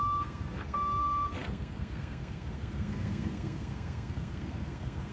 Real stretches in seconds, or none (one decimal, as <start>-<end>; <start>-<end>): none